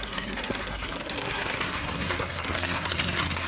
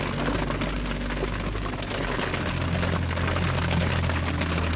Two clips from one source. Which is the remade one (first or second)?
first